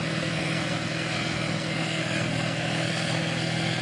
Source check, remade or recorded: remade